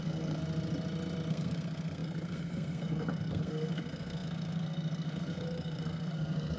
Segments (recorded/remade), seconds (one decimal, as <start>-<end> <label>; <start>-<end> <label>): 0.0-0.4 remade; 0.4-1.3 recorded; 1.3-6.6 remade